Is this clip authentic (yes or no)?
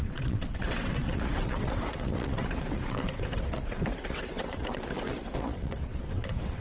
no